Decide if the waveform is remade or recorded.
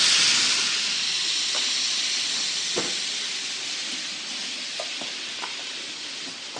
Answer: recorded